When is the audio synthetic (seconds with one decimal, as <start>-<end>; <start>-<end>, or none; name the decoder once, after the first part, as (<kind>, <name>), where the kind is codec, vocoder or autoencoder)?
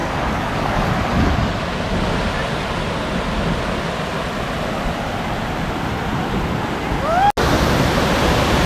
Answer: 0.0-0.9 (codec, DAC)